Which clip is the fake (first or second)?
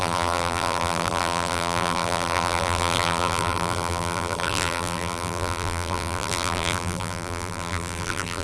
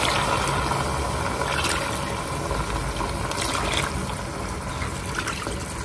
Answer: first